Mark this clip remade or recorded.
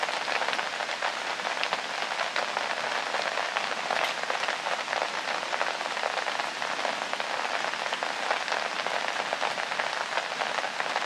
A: recorded